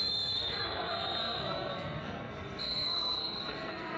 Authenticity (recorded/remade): remade